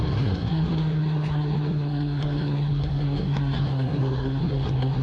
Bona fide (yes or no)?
no